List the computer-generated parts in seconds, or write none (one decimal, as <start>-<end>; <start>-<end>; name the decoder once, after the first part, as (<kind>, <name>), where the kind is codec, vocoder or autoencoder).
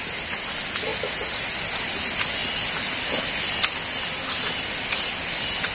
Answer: none